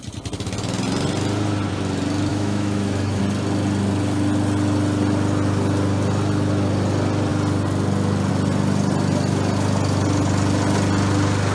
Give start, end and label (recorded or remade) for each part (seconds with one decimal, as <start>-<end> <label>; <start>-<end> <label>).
0.0-2.3 recorded; 2.3-3.2 remade; 3.2-11.5 recorded